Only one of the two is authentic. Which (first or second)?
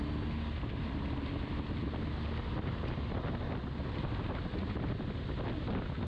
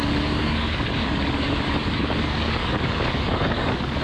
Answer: first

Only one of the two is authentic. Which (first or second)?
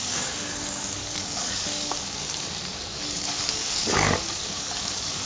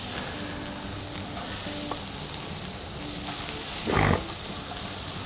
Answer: second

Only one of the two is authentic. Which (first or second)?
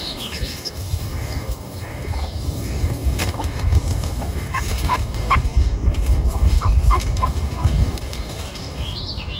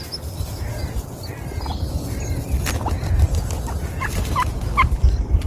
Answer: second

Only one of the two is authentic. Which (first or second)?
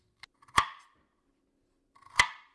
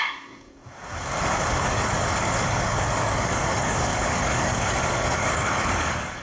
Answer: first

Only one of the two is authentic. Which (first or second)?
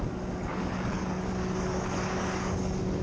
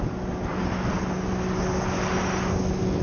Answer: second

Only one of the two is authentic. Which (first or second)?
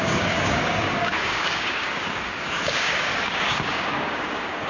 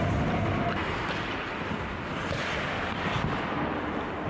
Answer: second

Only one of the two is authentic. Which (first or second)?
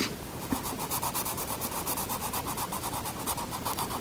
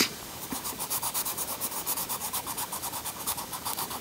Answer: first